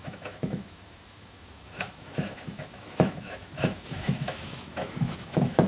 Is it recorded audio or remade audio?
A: remade